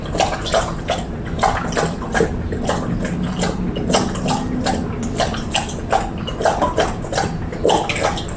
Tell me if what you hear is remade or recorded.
recorded